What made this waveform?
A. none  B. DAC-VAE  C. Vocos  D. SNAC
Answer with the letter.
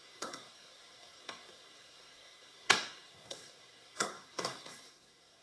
D